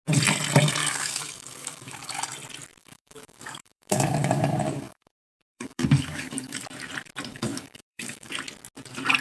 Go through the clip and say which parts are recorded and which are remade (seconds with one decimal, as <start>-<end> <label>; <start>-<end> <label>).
0.0-0.8 recorded; 0.8-2.2 remade; 2.2-2.8 recorded; 2.8-6.6 remade; 6.6-7.3 recorded; 7.3-8.3 remade; 8.3-9.2 recorded